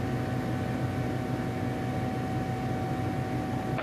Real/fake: real